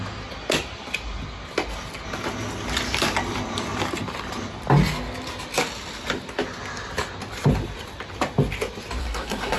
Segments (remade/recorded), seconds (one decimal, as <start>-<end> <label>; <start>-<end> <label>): 0.0-9.0 recorded; 9.0-9.6 remade